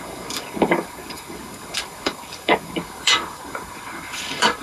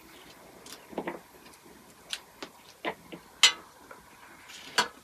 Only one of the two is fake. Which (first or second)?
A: first